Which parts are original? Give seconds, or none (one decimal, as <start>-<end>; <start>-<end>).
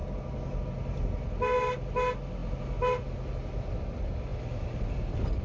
0.0-5.4